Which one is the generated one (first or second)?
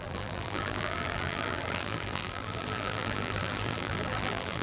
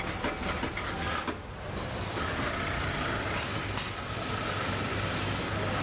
first